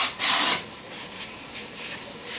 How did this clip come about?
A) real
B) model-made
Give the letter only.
A